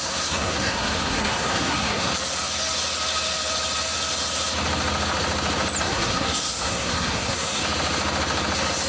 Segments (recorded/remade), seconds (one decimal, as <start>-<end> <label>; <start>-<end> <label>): 0.0-2.1 remade; 2.1-5.8 recorded; 5.8-7.6 remade; 7.6-8.9 recorded